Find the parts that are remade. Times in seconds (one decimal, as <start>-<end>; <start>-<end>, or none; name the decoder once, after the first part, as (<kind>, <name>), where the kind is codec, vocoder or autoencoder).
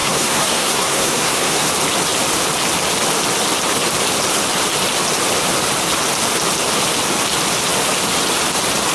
0.0-1.7 (codec, SNAC)